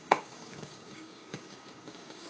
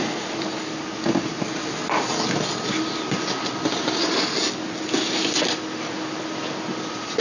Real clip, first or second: second